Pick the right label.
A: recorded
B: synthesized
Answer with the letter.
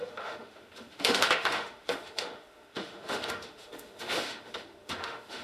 B